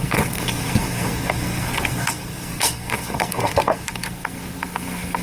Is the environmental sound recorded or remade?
remade